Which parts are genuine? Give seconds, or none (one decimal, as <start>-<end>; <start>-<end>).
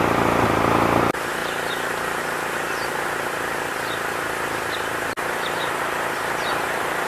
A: 0.0-7.1